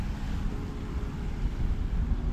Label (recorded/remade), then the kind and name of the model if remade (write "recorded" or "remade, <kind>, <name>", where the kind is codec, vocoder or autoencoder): recorded